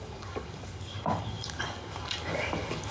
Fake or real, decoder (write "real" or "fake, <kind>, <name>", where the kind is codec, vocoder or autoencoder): fake, codec, DAC